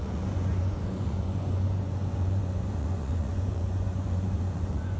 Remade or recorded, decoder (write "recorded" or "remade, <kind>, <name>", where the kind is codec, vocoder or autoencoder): remade, vocoder, Vocos